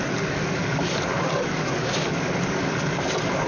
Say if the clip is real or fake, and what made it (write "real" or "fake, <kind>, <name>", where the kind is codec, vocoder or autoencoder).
fake, codec, DAC